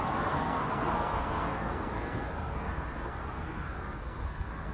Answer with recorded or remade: remade